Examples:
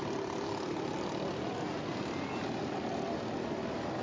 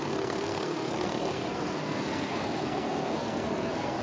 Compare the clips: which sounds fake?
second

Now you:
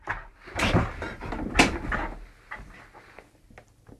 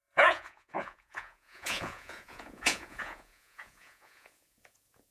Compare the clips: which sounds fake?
second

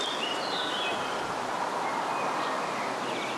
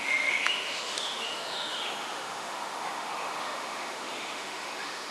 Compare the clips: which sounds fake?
second